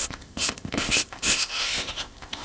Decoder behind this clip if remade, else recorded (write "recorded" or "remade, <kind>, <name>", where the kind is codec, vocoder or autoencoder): remade, codec, ZipCodec